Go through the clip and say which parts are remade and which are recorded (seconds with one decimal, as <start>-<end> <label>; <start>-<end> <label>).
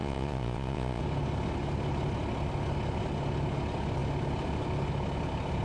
0.0-1.0 remade; 1.0-5.6 recorded